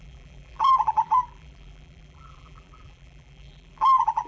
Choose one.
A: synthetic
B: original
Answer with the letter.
A